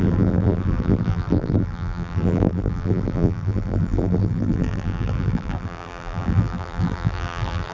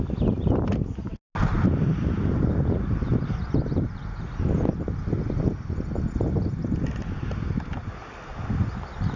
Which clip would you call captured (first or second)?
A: second